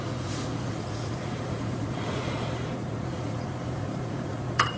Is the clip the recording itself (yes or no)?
no